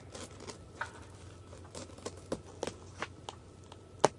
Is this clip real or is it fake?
real